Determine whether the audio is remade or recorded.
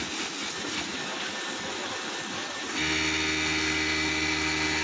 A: recorded